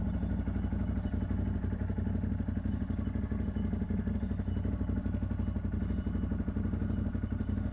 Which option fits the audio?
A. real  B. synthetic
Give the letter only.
A